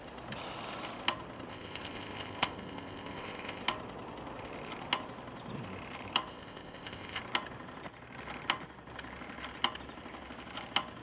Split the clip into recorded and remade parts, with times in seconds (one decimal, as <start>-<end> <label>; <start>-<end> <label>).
0.0-1.5 recorded; 1.5-3.6 remade; 3.6-6.3 recorded; 6.3-7.2 remade; 7.2-11.0 recorded